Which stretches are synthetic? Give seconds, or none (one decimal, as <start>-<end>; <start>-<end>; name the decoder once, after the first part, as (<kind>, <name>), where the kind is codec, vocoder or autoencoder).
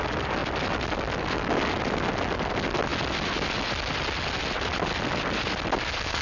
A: none